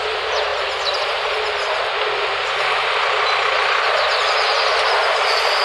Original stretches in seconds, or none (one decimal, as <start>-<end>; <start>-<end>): 0.0-5.6